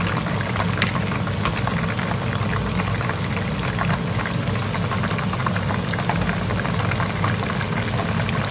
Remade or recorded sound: recorded